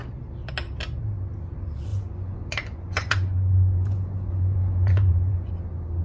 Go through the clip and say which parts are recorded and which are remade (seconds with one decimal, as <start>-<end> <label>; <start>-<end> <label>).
0.0-1.9 recorded; 1.9-5.5 remade; 5.5-6.0 recorded